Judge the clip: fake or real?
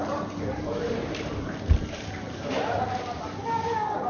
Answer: fake